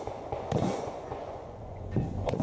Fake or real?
fake